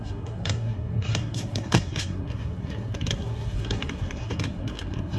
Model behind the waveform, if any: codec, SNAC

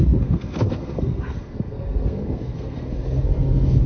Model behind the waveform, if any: codec, SNAC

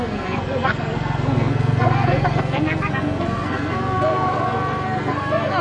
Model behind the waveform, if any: codec, SNAC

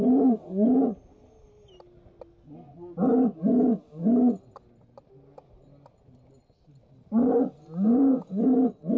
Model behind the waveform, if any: none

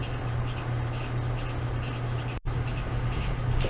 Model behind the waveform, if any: none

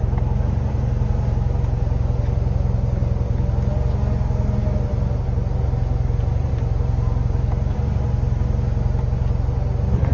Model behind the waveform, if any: none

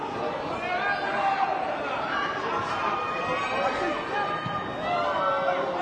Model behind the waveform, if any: none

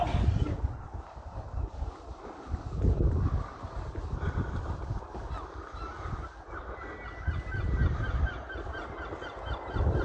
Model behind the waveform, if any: none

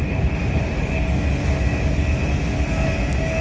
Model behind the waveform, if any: none